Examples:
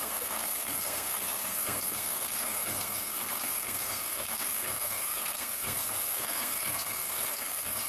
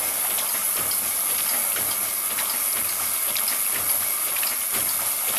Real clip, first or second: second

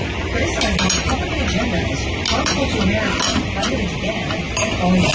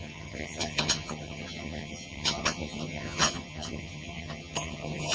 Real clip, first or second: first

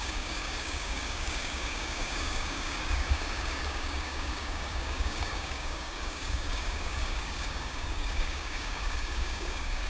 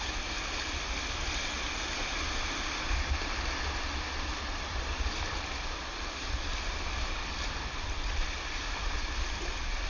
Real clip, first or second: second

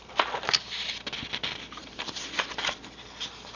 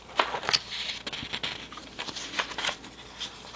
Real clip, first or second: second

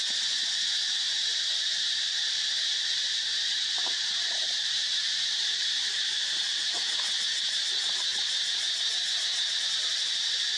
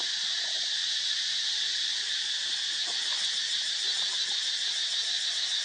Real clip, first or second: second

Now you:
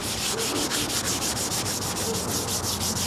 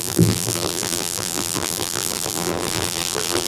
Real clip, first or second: first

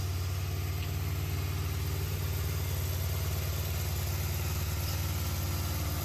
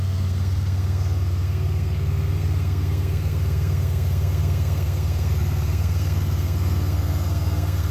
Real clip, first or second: first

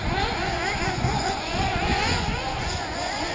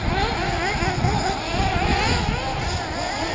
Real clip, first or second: second